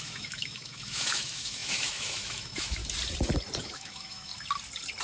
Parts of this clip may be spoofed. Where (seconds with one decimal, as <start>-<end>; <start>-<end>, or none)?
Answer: 0.0-2.8; 3.6-4.3